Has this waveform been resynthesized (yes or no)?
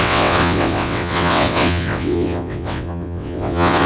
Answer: yes